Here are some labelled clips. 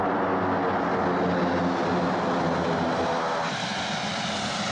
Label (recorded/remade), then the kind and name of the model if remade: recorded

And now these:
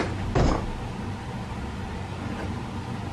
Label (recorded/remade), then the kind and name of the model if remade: recorded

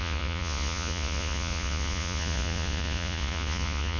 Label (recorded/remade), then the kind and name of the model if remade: remade, vocoder, Vocos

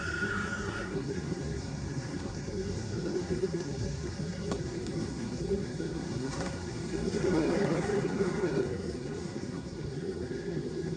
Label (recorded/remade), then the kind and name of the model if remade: remade, codec, SNAC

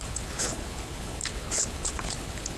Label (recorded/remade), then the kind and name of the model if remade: remade, codec, HILCodec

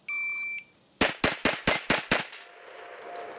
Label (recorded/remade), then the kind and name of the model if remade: recorded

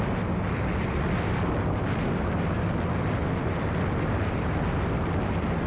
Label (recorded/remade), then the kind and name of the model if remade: recorded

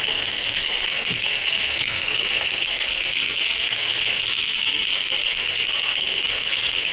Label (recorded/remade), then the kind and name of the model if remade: remade, codec, SNAC